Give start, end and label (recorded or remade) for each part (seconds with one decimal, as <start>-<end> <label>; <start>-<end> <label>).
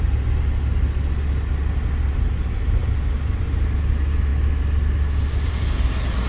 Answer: 0.0-6.3 recorded